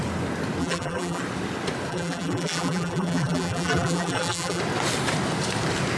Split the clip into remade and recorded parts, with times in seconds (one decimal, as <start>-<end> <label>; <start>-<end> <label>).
0.0-0.6 recorded; 0.6-1.2 remade; 1.2-1.9 recorded; 1.9-4.6 remade; 4.6-6.0 recorded